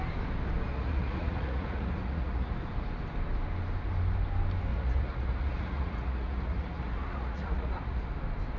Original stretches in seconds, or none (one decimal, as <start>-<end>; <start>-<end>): 0.0-0.7; 2.5-4.7; 8.0-8.6